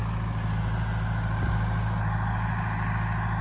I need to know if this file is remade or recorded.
recorded